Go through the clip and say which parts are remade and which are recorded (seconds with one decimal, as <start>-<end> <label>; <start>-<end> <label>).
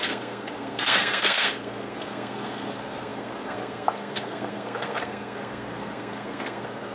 0.0-6.9 remade